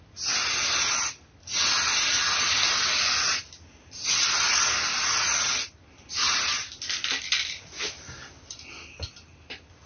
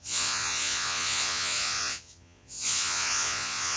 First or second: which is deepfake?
second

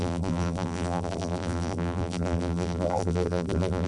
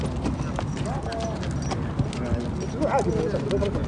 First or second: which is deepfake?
first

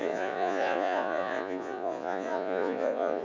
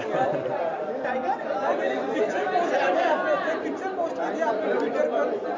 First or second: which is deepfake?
first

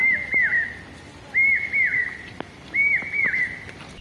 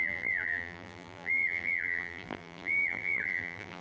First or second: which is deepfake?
second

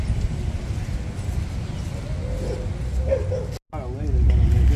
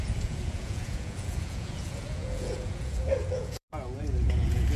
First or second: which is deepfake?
second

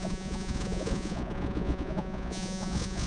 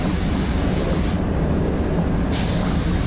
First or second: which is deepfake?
first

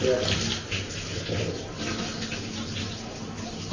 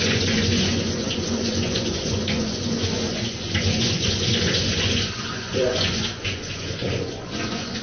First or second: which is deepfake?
second